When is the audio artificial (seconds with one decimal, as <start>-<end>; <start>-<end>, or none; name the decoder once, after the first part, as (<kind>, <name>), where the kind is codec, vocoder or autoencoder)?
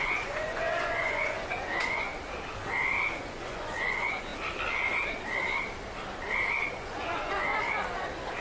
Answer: 0.0-2.1 (vocoder, Vocos); 3.2-4.3; 6.7-7.5